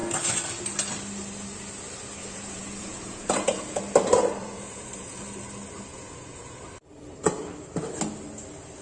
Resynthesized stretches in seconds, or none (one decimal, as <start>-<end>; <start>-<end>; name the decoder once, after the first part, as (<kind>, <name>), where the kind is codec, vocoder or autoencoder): 2.2-3.8 (vocoder, Vocos); 4.4-5.2; 5.9-6.6